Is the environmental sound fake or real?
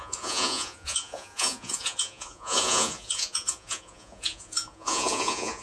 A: fake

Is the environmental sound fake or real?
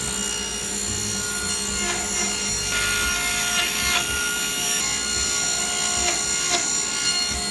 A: real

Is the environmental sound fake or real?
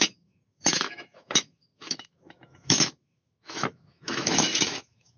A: fake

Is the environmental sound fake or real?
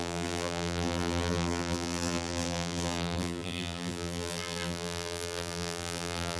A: fake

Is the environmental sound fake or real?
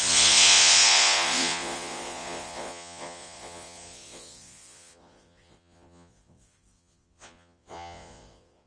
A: fake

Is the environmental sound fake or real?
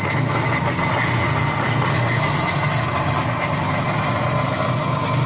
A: real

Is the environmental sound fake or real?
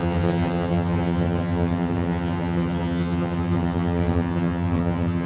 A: fake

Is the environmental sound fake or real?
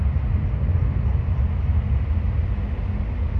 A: real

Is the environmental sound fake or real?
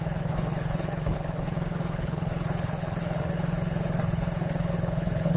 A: fake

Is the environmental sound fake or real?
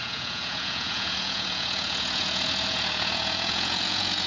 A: fake